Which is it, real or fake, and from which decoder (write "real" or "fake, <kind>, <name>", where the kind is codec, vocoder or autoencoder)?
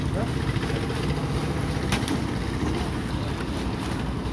real